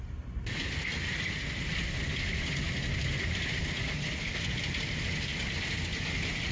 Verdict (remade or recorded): recorded